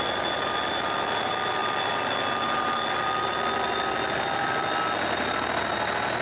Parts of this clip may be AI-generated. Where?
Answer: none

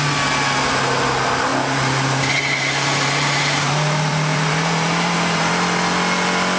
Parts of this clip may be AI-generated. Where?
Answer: 1.5-5.5

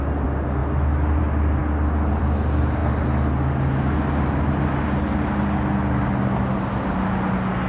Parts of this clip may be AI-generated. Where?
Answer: none

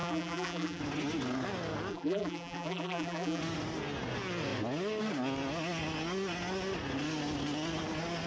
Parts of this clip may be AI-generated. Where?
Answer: 0.0-0.8; 1.9-3.4